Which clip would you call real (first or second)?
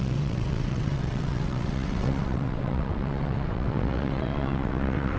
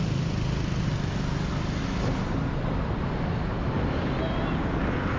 second